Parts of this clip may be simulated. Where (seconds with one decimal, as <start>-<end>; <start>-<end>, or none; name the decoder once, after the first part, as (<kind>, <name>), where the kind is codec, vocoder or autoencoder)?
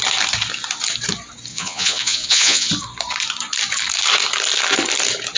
1.5-2.7 (vocoder, Vocos)